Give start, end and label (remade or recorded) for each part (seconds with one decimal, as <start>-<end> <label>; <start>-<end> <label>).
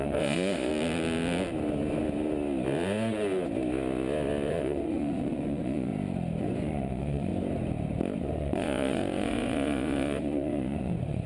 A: 0.0-0.7 remade; 0.7-4.5 recorded; 4.5-5.9 remade; 5.9-6.4 recorded; 6.4-7.3 remade; 7.3-8.2 recorded; 8.2-11.3 remade